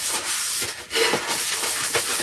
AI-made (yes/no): no